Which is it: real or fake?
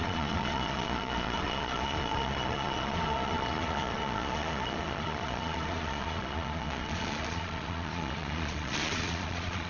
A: fake